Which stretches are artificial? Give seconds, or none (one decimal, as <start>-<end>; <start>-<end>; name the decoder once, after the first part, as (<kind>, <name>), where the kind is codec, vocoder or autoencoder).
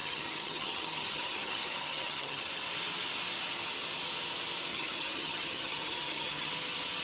0.0-2.5 (vocoder, HiFi-GAN); 4.7-6.5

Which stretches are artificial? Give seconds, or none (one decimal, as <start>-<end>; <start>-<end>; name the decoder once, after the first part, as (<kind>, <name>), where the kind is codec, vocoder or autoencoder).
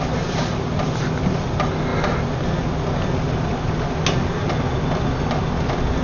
none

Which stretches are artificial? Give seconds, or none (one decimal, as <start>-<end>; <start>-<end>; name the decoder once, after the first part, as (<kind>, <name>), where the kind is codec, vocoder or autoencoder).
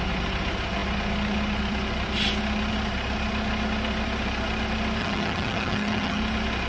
5.0-6.2 (vocoder, HiFi-GAN)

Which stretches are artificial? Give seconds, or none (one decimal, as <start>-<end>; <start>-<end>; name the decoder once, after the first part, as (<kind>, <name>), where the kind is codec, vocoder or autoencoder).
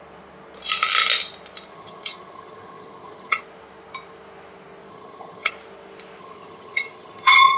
1.7-3.4 (vocoder, HiFi-GAN); 4.9-5.5; 6.2-7.6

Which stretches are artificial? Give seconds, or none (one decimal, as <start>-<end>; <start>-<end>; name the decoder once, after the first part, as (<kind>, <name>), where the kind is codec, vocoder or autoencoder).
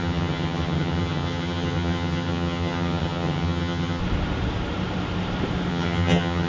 0.0-4.0 (vocoder, HiFi-GAN); 5.7-6.5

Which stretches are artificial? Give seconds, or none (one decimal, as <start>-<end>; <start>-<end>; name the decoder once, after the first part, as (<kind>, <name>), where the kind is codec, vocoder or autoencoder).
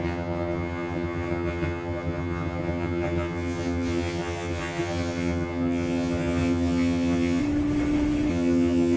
0.0-7.4 (vocoder, HiFi-GAN); 8.3-9.0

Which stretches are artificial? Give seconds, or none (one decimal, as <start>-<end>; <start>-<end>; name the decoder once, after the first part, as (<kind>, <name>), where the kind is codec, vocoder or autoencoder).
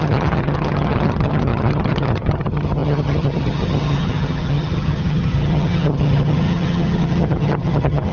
0.0-8.1 (vocoder, HiFi-GAN)